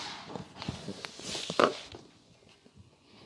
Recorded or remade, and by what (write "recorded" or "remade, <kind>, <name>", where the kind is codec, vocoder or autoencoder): remade, vocoder, Vocos